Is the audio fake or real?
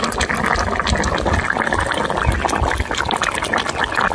real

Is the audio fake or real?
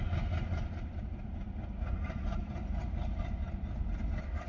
real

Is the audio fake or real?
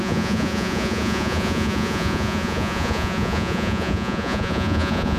fake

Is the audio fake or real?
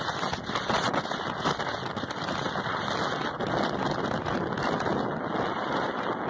real